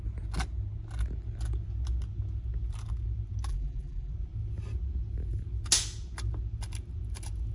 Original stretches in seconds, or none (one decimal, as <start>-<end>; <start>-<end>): 0.0-3.5; 4.1-7.5